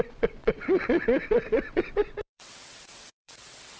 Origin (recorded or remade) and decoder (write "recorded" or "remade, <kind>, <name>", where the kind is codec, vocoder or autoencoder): remade, vocoder, WaveNeXt